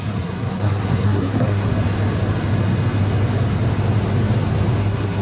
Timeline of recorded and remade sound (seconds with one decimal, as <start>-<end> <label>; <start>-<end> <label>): 0.0-1.7 remade; 1.7-4.8 recorded; 4.8-5.2 remade